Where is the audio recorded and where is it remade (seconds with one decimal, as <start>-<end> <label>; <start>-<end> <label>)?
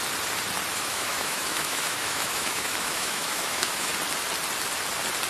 0.0-0.7 recorded; 0.7-3.9 remade; 3.9-5.3 recorded